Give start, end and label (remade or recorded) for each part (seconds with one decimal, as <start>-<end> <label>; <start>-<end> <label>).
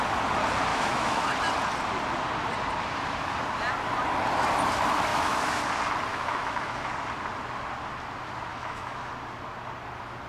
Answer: 0.0-0.7 recorded; 0.7-1.2 remade; 1.2-5.1 recorded; 5.1-5.6 remade; 5.6-6.1 recorded; 6.1-6.9 remade; 6.9-8.5 recorded; 8.5-9.1 remade; 9.1-10.3 recorded